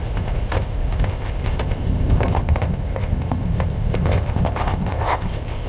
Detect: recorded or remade remade